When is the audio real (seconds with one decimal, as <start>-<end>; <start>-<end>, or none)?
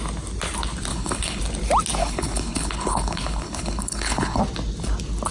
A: 0.0-0.9; 1.4-2.0; 4.4-5.3